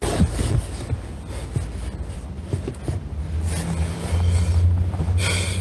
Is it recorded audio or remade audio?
recorded